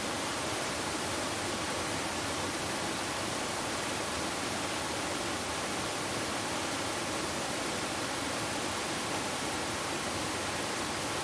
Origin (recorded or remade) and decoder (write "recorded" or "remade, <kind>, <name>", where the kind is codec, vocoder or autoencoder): recorded